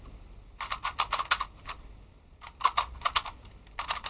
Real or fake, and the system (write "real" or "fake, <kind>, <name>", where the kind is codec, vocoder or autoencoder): real